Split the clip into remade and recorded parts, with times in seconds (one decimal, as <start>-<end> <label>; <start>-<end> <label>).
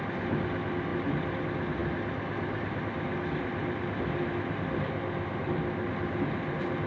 0.0-6.9 recorded